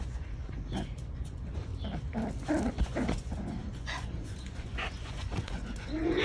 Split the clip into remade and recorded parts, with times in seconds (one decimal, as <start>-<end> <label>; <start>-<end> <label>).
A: 0.0-1.7 remade; 1.7-2.8 recorded; 2.8-6.2 remade